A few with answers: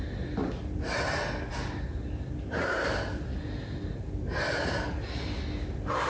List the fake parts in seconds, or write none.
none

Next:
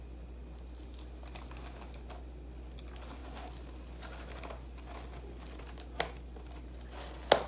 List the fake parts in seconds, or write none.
none

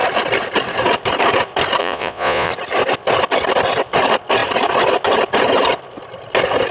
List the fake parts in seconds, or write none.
1.8-2.5 (vocoder, Vocos)

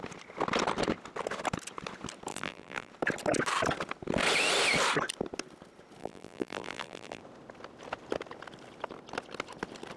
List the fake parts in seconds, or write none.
2.3-2.9 (vocoder, BigVGAN v2); 6.0-7.2

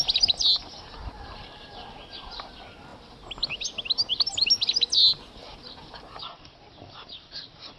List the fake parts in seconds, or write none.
none